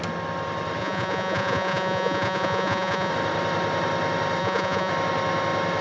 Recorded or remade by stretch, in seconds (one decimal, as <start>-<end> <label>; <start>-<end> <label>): 0.0-0.8 recorded; 0.8-3.1 remade; 3.1-4.4 recorded; 4.4-4.9 remade; 4.9-5.8 recorded